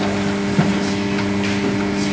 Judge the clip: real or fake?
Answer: real